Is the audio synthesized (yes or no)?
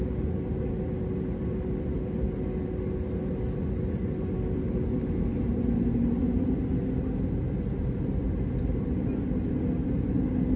no